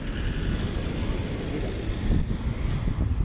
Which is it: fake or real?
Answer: real